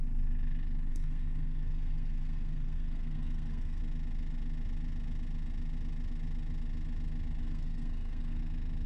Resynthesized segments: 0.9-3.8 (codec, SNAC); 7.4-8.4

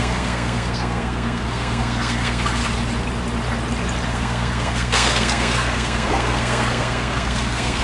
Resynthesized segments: 0.0-2.6 (codec, SNAC); 4.1-7.8

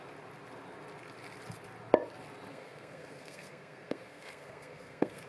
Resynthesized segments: 2.5-5.3 (codec, SNAC)

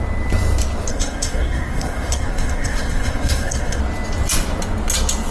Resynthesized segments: 0.9-3.8 (codec, SNAC)

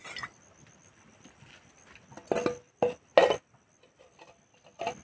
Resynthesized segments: none

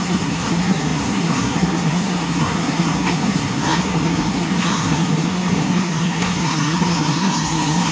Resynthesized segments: 0.0-7.9 (codec, SNAC)

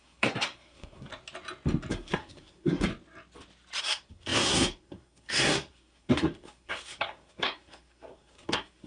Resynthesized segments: 0.0-1.1 (codec, SNAC); 1.9-2.9; 3.8-8.9